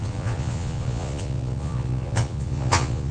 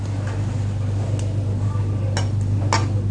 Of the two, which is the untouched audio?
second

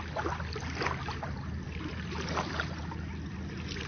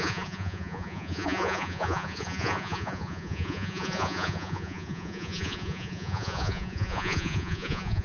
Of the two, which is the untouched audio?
first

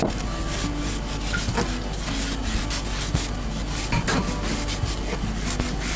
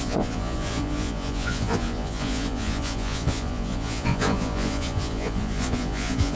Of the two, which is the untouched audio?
first